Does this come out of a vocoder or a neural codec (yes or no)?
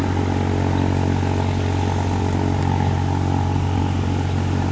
no